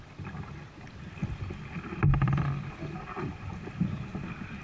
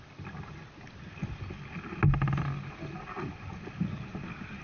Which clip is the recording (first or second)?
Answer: second